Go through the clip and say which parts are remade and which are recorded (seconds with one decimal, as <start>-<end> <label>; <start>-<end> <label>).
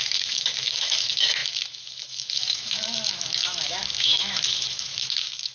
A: 0.0-5.5 remade